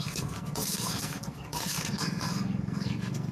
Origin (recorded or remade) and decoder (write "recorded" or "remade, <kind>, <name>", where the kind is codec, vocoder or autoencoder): remade, codec, SNAC